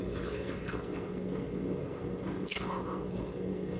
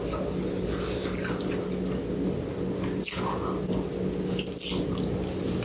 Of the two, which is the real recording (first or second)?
second